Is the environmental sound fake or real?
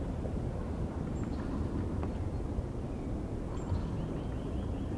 real